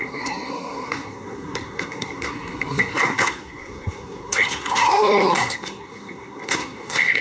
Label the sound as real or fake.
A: fake